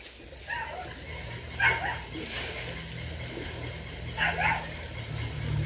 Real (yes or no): yes